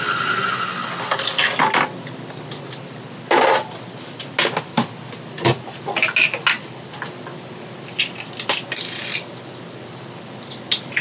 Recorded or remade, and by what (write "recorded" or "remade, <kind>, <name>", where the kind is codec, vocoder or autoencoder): recorded